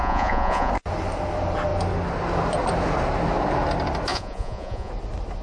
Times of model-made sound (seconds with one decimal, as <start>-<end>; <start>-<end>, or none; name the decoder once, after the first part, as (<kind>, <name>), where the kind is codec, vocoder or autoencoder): 0.0-0.7 (vocoder, Vocos); 4.1-4.9